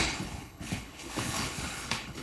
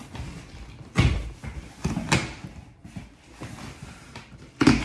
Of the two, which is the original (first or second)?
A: second